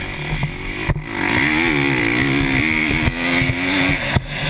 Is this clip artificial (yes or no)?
no